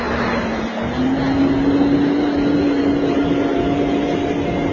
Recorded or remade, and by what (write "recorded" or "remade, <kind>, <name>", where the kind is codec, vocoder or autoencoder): recorded